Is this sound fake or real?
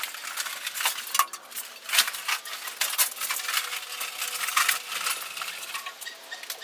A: real